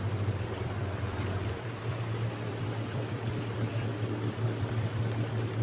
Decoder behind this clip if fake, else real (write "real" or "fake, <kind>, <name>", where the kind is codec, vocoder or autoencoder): fake, vocoder, BigVGAN v2